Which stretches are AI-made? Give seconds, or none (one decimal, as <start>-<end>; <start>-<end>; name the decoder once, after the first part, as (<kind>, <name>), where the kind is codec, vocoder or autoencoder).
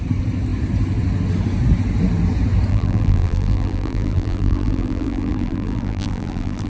2.7-6.7 (vocoder, BigVGAN v2)